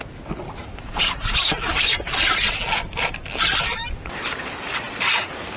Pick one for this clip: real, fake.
real